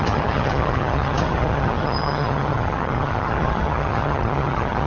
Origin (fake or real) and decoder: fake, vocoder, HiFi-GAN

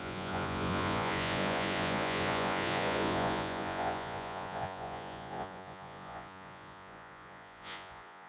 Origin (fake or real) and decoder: fake, vocoder, Vocos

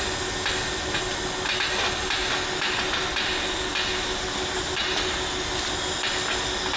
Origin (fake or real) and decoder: real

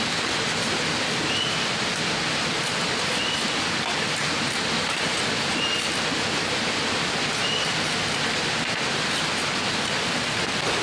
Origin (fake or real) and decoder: real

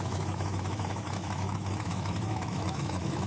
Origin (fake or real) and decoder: fake, autoencoder, DAC-VAE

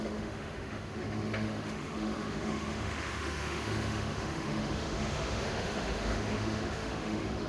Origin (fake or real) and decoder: fake, autoencoder, DAC-VAE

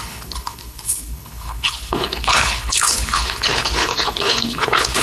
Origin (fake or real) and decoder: fake, codec, HILCodec